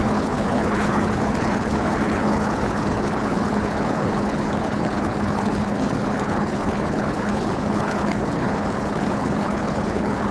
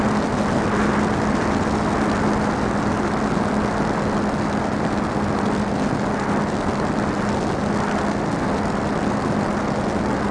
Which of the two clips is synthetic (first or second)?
first